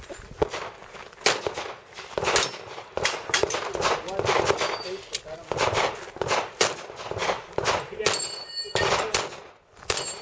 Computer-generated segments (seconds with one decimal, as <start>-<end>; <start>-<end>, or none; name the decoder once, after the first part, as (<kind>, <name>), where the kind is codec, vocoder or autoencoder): none